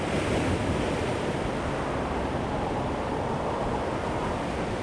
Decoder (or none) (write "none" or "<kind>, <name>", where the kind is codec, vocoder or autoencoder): none